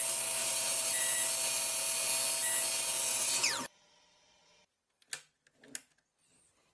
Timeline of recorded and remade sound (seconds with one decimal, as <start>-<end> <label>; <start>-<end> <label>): 0.0-0.4 recorded; 0.4-1.0 remade; 1.0-3.1 recorded; 3.1-5.1 remade; 5.1-6.7 recorded